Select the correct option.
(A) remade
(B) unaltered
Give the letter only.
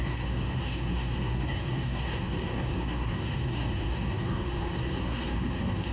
A